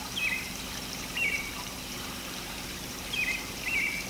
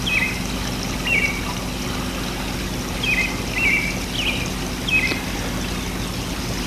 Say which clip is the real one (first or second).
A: second